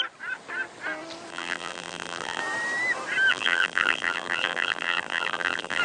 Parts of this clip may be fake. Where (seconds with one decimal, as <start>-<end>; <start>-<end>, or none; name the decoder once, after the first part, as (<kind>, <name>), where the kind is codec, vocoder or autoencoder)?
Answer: 1.3-2.4 (vocoder, BigVGAN v2); 3.3-5.8